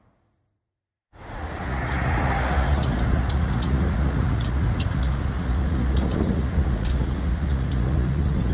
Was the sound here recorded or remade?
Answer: remade